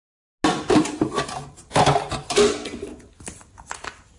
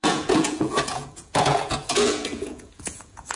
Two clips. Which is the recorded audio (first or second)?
first